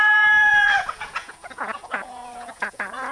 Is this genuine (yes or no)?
no